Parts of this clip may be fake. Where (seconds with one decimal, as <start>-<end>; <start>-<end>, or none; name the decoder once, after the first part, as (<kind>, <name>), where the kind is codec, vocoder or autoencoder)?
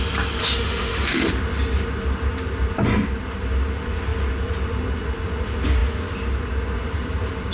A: 0.4-1.3 (autoencoder, DAC-VAE)